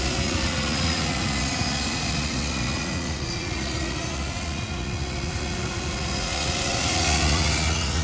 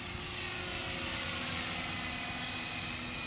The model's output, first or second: first